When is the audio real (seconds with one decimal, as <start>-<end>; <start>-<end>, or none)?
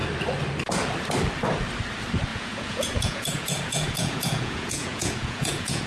0.0-2.3